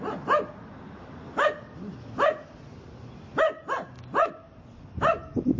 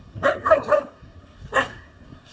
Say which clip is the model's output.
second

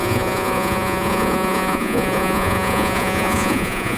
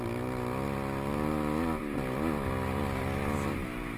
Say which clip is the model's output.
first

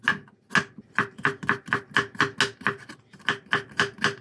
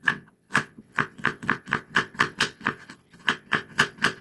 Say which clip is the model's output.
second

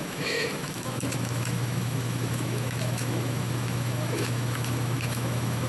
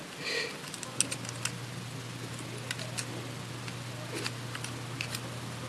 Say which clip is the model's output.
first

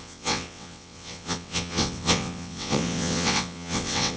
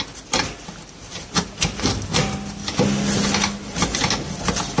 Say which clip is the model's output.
first